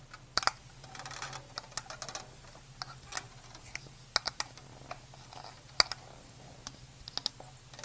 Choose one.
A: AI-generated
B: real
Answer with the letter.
B